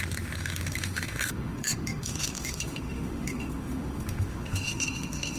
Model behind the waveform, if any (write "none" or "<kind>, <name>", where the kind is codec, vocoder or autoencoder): autoencoder, DAC-VAE